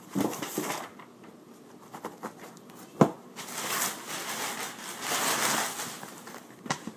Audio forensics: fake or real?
real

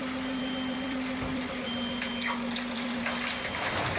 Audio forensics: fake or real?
fake